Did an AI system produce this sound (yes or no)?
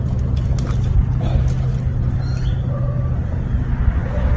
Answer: no